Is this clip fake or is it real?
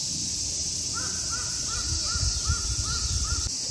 real